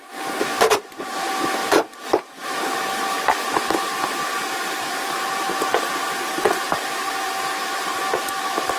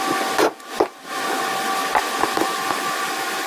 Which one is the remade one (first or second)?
first